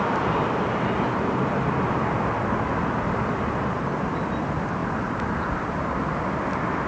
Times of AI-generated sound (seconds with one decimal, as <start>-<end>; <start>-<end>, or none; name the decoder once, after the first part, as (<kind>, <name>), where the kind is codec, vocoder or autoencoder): 4.8-5.5 (vocoder, BigVGAN v2)